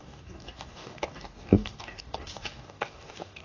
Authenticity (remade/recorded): remade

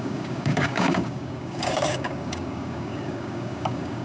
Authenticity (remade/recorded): remade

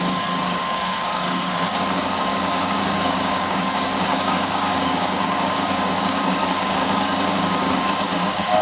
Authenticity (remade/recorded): remade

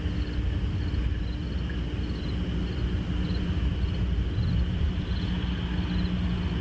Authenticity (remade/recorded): recorded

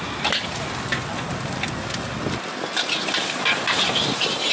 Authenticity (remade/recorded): recorded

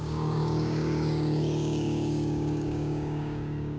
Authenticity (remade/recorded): remade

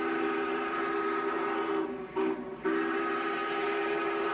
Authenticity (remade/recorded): recorded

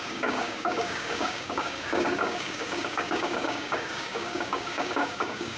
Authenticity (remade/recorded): remade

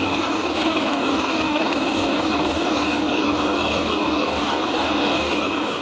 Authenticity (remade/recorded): remade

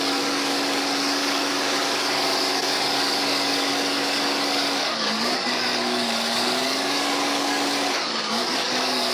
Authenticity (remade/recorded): remade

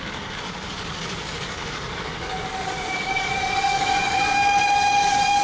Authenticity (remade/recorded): remade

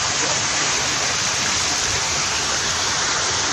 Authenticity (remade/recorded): recorded